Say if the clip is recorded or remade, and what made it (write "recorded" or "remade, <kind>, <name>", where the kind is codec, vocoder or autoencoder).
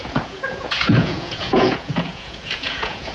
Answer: remade, vocoder, Vocos